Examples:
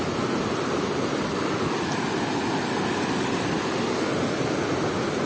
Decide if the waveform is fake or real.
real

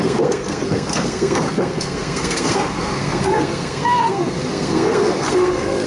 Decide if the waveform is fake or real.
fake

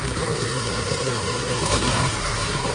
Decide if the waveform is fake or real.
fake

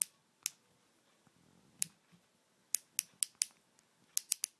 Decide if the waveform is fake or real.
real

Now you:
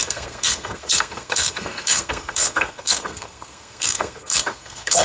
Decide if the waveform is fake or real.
fake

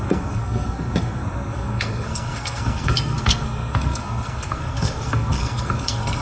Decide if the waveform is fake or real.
fake